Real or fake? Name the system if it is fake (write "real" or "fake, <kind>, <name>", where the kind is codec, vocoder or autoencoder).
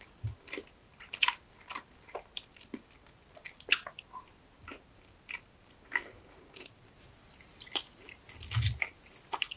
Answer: real